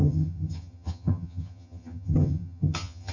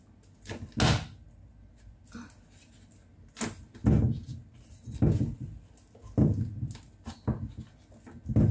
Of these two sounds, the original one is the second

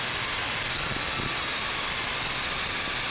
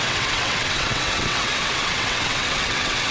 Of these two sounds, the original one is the first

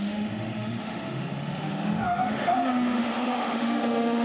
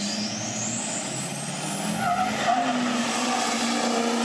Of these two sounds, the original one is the second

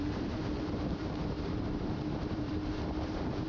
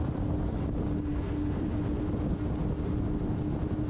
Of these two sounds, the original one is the second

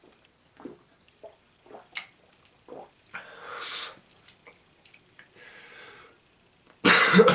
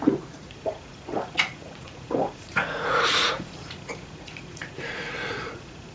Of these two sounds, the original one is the first